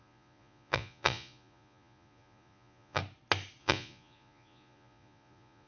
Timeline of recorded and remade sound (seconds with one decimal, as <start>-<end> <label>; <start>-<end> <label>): 0.0-3.0 remade; 3.0-3.6 recorded; 3.6-5.7 remade